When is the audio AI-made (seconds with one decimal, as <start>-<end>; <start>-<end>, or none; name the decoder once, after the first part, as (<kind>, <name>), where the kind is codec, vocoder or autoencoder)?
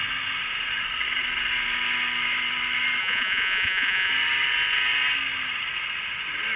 3.0-4.1 (vocoder, Vocos)